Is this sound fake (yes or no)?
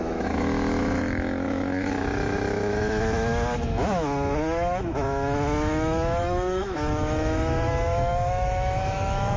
yes